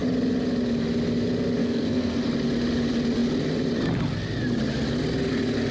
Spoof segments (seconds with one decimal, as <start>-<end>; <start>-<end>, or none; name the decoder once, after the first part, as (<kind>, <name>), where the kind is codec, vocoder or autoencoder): 1.6-2.2 (codec, SNAC)